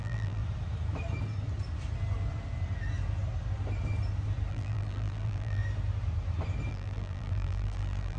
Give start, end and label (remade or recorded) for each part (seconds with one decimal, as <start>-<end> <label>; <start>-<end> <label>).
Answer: 0.0-0.4 remade; 0.4-4.5 recorded; 4.5-5.6 remade; 5.6-6.7 recorded; 6.7-8.2 remade